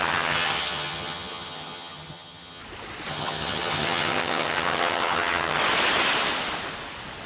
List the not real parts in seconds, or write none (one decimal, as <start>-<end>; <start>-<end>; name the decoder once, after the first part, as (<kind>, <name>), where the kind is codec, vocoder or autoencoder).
0.0-2.6 (vocoder, HiFi-GAN); 3.1-5.6